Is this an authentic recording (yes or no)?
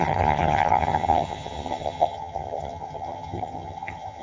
no